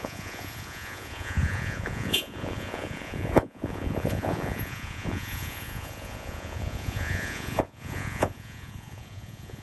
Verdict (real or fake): fake